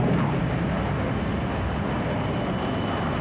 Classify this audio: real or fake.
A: real